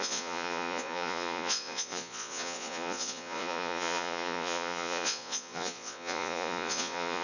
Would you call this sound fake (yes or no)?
yes